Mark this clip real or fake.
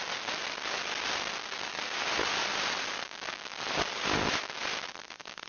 real